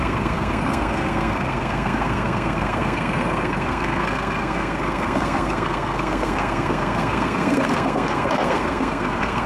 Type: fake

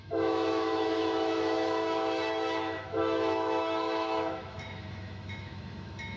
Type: fake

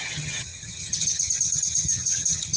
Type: fake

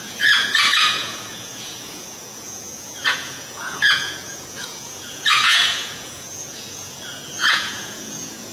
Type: fake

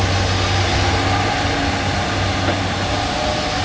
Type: real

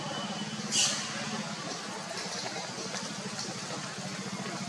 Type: real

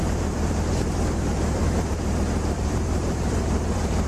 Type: fake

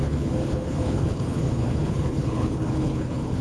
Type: fake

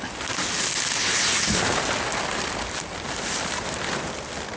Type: real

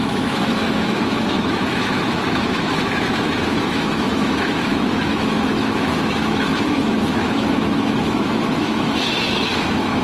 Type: fake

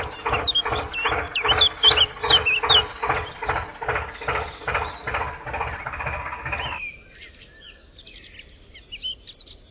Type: real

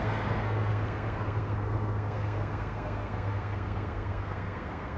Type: fake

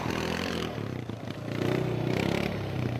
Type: fake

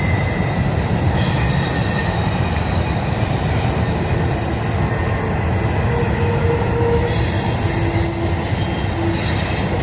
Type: real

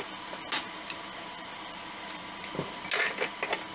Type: real